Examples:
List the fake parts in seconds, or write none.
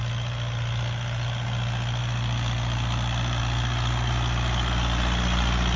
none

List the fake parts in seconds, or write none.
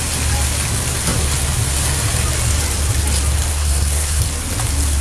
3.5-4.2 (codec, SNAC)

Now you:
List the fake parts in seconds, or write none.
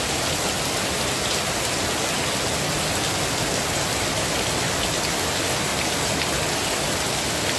none